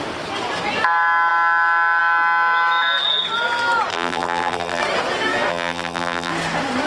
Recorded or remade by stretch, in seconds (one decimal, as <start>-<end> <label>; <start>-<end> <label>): 0.0-3.9 recorded; 3.9-4.8 remade; 4.8-5.5 recorded; 5.5-6.3 remade; 6.3-6.9 recorded

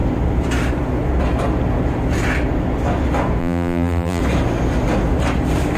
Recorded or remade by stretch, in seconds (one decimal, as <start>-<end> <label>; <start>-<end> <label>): 0.0-3.4 recorded; 3.4-4.2 remade; 4.2-5.8 recorded

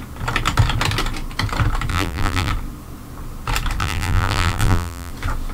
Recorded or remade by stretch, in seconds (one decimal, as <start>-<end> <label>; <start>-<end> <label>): 0.0-1.9 recorded; 1.9-2.5 remade; 2.5-3.8 recorded; 3.8-5.1 remade; 5.1-5.5 recorded

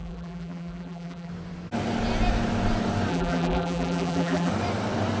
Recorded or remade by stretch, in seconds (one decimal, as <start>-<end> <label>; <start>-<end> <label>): 0.0-1.3 remade; 1.3-3.1 recorded; 3.1-4.5 remade; 4.5-5.2 recorded

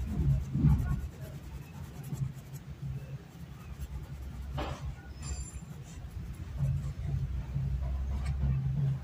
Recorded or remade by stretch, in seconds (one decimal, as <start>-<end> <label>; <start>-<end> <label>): 0.0-1.7 recorded; 1.7-2.2 remade; 2.2-9.0 recorded